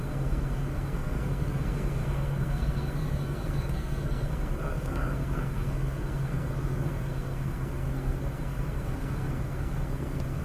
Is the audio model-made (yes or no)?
yes